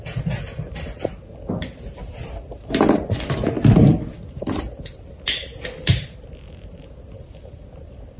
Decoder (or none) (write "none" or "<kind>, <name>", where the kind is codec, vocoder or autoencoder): none